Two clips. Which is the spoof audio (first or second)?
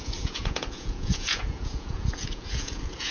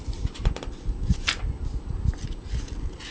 first